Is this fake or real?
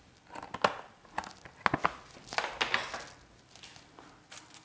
real